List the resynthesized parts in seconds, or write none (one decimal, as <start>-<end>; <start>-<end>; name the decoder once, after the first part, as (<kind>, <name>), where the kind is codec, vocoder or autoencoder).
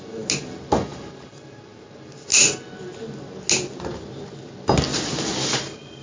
none